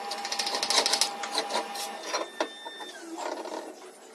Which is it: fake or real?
real